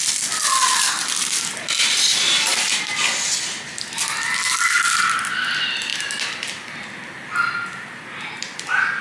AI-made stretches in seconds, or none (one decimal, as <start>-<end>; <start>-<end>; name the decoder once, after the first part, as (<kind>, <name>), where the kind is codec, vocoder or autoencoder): none